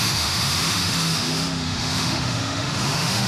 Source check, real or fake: fake